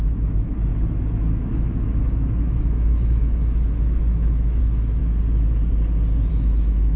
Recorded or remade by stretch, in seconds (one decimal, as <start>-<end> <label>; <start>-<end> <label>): 0.0-5.0 remade; 5.0-6.3 recorded; 6.3-7.0 remade